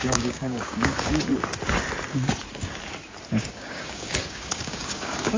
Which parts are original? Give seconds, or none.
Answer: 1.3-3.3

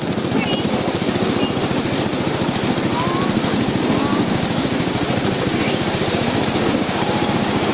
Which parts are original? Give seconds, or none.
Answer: 0.0-3.5